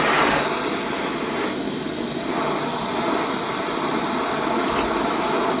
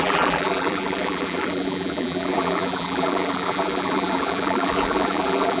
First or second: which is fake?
second